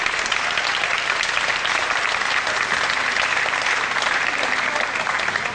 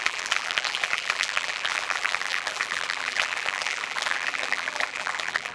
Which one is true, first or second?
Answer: first